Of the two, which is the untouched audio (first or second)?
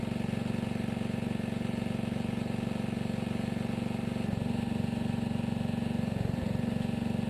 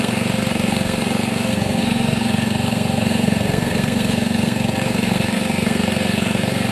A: first